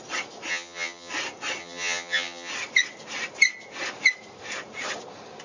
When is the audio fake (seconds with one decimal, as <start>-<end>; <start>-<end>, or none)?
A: 0.5-1.1; 1.6-2.5

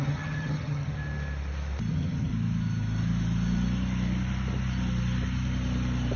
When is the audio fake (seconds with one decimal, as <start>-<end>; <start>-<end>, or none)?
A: 0.0-0.9; 1.9-2.3

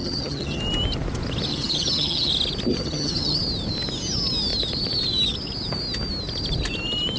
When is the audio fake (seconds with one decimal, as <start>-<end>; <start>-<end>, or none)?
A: 0.0-0.6; 1.5-2.3; 2.7-3.4

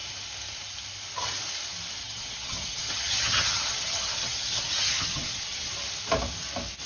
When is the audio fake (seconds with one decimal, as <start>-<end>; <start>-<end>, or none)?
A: 2.0-5.7

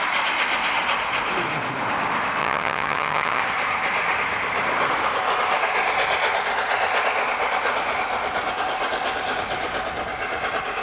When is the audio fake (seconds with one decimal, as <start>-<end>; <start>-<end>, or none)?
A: 2.4-3.4

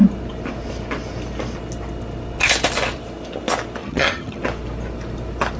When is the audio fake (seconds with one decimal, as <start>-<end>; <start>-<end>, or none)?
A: 3.8-4.4